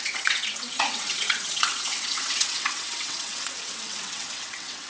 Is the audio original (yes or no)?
no